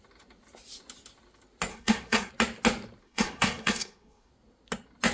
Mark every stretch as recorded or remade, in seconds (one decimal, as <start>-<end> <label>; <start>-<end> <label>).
0.0-1.7 recorded; 1.7-2.3 remade; 2.3-3.0 recorded; 3.0-4.3 remade; 4.3-5.1 recorded